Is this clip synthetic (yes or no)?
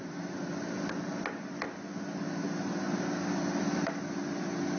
no